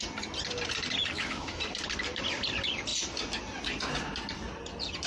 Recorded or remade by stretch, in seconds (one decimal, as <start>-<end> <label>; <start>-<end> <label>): 0.0-1.0 recorded; 1.0-1.6 remade; 1.6-5.1 recorded